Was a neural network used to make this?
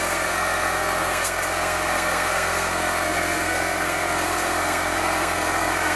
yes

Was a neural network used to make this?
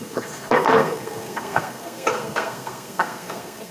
yes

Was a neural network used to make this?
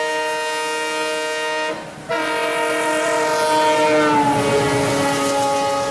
no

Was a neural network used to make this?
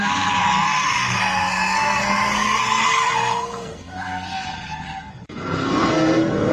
yes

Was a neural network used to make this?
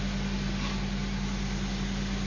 no